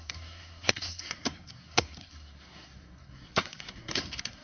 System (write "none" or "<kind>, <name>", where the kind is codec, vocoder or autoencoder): codec, SNAC